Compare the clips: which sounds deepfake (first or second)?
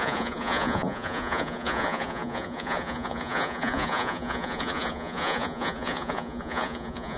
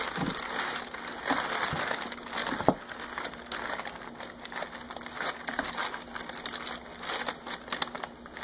first